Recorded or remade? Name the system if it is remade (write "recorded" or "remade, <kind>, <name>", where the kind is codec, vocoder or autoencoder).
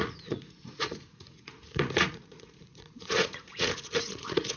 remade, vocoder, Vocos